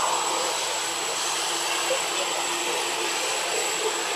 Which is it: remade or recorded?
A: recorded